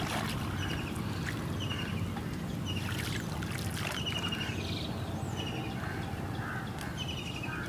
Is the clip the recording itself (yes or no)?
yes